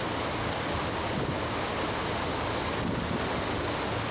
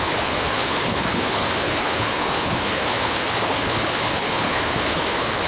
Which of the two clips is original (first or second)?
first